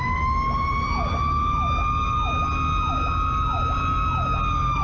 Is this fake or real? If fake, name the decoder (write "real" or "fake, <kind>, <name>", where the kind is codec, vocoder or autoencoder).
real